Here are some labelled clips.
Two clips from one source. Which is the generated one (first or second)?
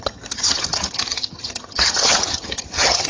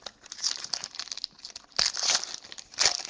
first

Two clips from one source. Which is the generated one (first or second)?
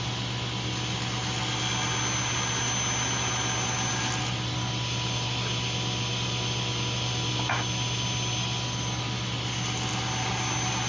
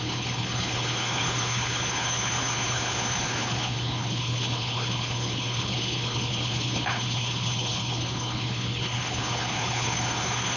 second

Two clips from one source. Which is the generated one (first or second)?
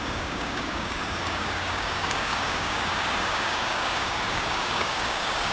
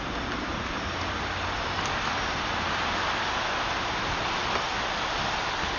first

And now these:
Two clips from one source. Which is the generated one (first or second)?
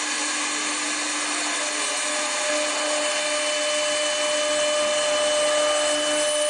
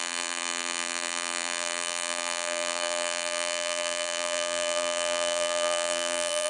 second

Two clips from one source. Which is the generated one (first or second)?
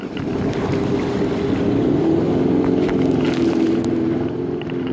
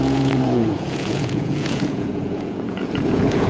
second